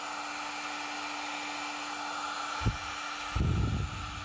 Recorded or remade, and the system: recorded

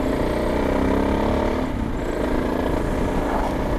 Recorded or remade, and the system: recorded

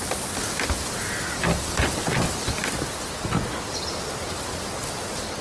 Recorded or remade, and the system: recorded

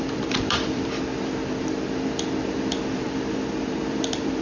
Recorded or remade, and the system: remade, vocoder, BigVGAN v2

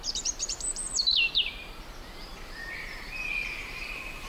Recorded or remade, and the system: remade, vocoder, BigVGAN v2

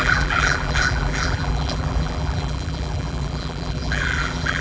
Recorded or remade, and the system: remade, vocoder, BigVGAN v2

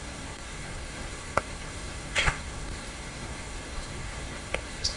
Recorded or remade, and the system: remade, codec, SNAC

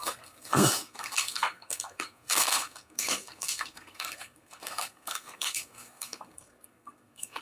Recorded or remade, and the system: remade, codec, SNAC